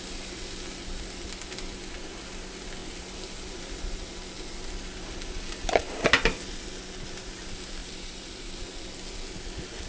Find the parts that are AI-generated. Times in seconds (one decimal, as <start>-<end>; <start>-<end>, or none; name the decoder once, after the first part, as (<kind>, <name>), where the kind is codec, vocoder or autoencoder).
2.8-4.0 (vocoder, BigVGAN v2); 7.8-8.8